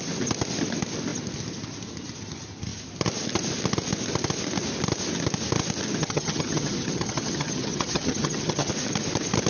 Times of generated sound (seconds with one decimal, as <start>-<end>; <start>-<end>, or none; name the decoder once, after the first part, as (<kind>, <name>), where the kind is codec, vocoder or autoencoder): 6.0-8.7 (vocoder, HiFi-GAN)